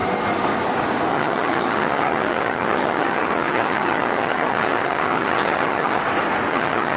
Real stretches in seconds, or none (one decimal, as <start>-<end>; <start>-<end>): 0.0-1.1; 6.0-6.5